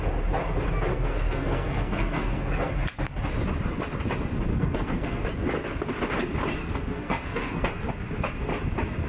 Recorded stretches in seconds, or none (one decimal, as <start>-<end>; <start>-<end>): 0.0-0.9; 2.7-4.5; 5.3-6.6; 7.8-9.1